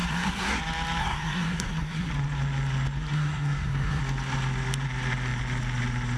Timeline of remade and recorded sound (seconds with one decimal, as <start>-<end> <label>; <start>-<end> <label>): 0.0-0.6 remade; 0.6-1.0 recorded; 1.0-2.1 remade; 2.1-3.1 recorded; 3.1-4.0 remade; 4.0-6.2 recorded